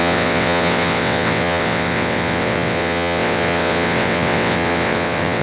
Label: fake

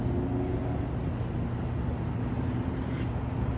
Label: real